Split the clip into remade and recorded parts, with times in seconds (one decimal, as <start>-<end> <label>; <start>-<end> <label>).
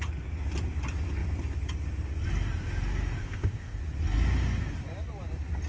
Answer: 0.0-3.2 recorded; 3.2-3.8 remade; 3.8-5.7 recorded